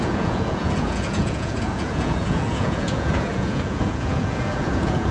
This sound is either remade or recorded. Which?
remade